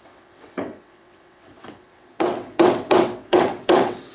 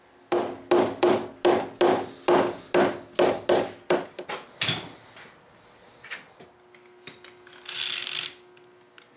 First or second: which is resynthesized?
first